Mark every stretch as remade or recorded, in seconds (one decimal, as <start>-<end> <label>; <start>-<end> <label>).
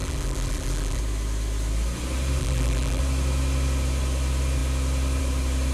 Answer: 0.0-1.0 remade; 1.0-2.4 recorded; 2.4-3.0 remade; 3.0-5.7 recorded